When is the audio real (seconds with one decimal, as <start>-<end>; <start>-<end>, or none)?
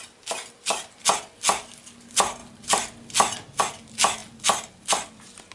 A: 0.0-5.5